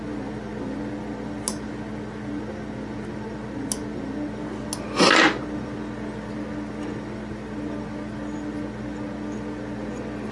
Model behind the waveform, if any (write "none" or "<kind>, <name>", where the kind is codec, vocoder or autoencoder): none